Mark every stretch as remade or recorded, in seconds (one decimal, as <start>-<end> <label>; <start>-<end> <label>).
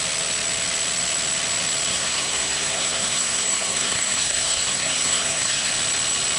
0.0-1.9 recorded; 1.9-5.7 remade; 5.7-6.4 recorded